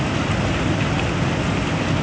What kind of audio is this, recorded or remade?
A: recorded